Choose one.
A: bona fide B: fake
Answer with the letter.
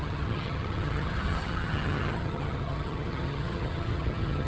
B